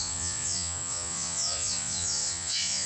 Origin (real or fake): fake